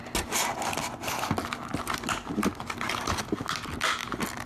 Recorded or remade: recorded